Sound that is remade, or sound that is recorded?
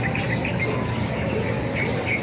recorded